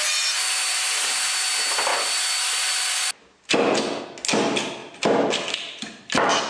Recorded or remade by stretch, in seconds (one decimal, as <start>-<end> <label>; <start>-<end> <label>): 0.0-6.5 recorded